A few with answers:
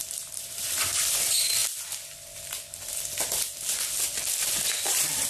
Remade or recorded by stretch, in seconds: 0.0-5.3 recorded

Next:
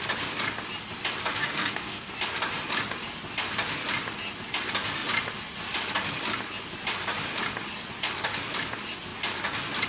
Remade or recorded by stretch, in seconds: 0.0-1.4 recorded; 1.4-2.1 remade; 2.1-9.9 recorded

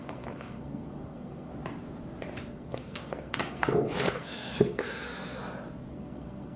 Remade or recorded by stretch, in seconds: 0.0-1.5 remade; 1.5-2.5 recorded; 2.5-5.4 remade; 5.4-5.9 recorded; 5.9-6.6 remade